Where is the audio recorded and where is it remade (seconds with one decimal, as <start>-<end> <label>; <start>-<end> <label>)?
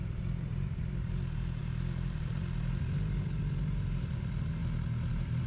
0.0-4.6 remade; 4.6-5.1 recorded; 5.1-5.5 remade